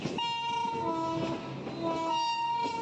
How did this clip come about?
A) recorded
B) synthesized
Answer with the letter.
A